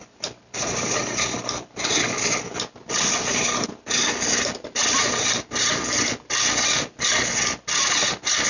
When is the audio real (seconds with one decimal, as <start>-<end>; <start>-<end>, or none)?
0.0-8.5